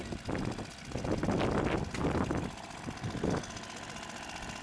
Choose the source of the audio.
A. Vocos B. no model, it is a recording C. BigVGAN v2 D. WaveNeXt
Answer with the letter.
B